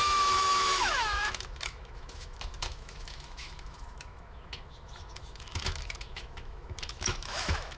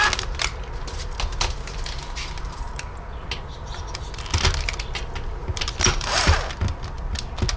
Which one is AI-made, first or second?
first